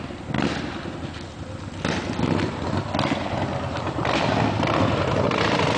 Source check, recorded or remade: recorded